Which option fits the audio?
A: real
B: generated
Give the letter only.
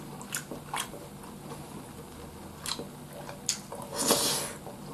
A